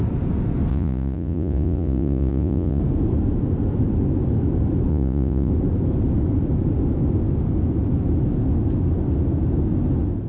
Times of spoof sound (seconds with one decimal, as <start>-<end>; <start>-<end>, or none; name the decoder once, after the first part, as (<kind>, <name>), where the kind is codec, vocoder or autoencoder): 0.7-2.8 (vocoder, Vocos); 4.9-5.5